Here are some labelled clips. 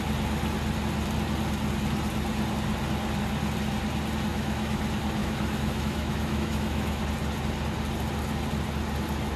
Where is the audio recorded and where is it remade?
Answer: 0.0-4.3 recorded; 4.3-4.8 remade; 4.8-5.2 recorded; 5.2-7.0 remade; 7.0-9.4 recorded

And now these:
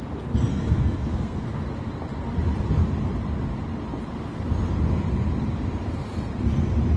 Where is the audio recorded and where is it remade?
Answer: 0.0-0.5 recorded; 0.5-1.6 remade; 1.6-7.0 recorded

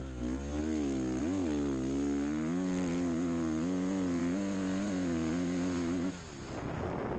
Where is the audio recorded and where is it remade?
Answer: 0.0-7.2 recorded

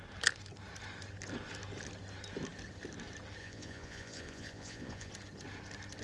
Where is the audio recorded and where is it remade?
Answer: 0.0-3.4 recorded; 3.4-5.1 remade; 5.1-6.0 recorded

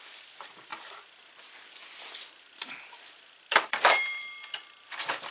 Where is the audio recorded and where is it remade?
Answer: 0.0-0.7 remade; 0.7-3.9 recorded; 3.9-5.3 remade